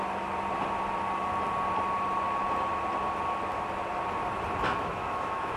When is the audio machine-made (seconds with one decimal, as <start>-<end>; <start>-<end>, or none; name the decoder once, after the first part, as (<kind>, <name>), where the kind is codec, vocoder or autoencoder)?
4.7-5.6 (autoencoder, DAC-VAE)